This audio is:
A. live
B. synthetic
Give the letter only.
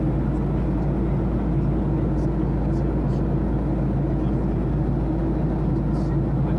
A